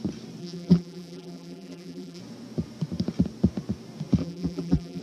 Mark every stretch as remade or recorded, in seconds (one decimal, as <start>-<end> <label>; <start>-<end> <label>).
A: 0.0-0.4 recorded; 0.4-2.2 remade; 2.2-4.2 recorded; 4.2-5.0 remade